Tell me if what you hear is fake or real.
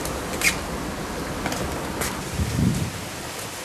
real